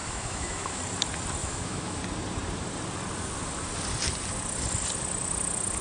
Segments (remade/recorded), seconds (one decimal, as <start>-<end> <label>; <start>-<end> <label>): 0.0-0.8 remade; 0.8-1.4 recorded; 1.4-2.0 remade; 2.0-5.8 recorded